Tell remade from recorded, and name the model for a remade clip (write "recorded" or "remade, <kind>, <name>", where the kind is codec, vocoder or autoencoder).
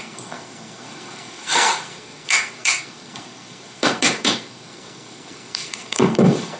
remade, codec, SNAC